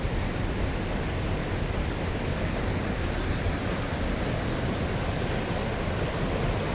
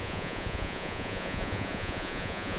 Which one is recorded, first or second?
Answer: first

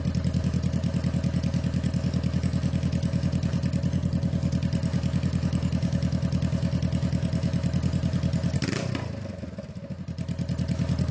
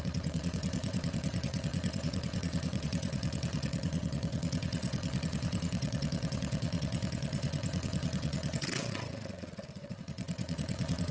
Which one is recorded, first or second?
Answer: first